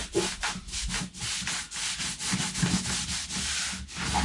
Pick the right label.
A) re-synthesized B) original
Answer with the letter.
B